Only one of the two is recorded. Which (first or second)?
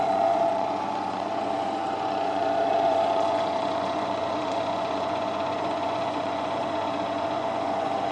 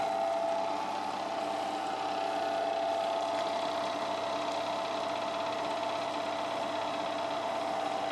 second